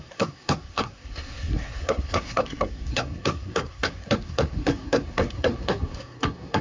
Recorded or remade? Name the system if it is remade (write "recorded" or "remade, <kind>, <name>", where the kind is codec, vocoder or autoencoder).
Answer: remade, codec, SNAC